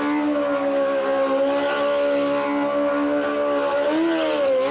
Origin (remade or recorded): recorded